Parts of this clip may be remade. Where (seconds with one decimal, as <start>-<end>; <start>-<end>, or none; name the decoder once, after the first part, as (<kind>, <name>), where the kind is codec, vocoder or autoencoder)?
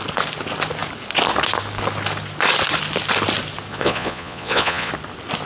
3.7-4.9 (vocoder, Vocos)